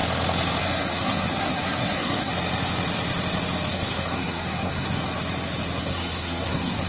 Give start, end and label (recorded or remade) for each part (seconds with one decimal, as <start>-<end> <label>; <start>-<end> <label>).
0.0-0.6 recorded; 0.6-2.3 remade; 2.3-3.7 recorded; 3.7-5.0 remade; 5.0-5.8 recorded; 5.8-6.9 remade